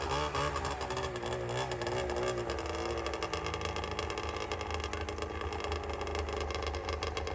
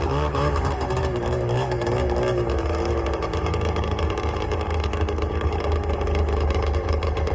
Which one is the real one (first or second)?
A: first